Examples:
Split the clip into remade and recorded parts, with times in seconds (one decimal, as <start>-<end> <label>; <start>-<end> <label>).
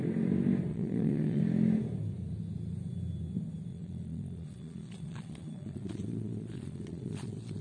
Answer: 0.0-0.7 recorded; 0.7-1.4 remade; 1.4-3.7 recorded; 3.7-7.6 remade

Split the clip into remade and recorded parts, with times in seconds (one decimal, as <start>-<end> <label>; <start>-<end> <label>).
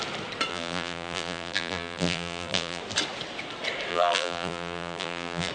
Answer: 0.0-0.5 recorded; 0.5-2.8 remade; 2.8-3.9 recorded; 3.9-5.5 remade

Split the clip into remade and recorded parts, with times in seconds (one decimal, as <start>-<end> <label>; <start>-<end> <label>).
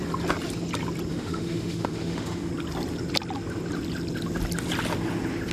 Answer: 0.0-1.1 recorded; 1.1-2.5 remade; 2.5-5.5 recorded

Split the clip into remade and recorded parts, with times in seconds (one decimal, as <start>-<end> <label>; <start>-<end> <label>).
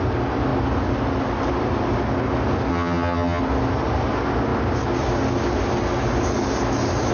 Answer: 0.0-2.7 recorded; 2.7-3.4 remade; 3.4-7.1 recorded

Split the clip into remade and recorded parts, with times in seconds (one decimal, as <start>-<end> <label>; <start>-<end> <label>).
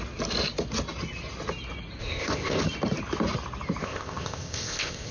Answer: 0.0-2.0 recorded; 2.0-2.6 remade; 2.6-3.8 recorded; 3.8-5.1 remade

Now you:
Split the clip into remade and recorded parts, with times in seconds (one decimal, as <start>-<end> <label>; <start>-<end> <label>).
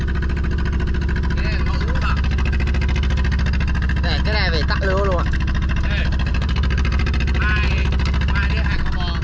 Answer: 0.0-6.3 recorded; 6.3-7.2 remade; 7.2-9.2 recorded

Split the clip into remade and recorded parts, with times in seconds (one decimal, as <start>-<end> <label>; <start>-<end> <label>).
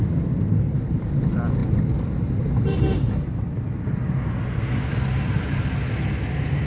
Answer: 0.0-1.6 recorded; 1.6-5.6 remade; 5.6-6.7 recorded